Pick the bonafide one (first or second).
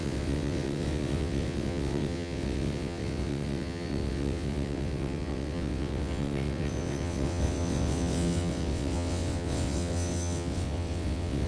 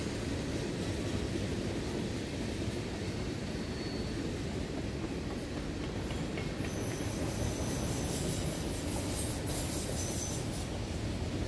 second